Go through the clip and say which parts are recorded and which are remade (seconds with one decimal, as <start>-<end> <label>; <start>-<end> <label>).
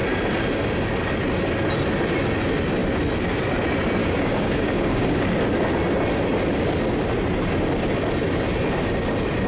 0.0-4.0 recorded; 4.0-5.2 remade; 5.2-9.5 recorded